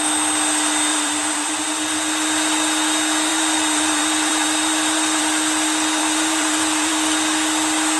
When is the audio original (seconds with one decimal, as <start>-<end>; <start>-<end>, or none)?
0.0-0.9; 1.6-3.3; 5.2-6.0; 6.9-8.0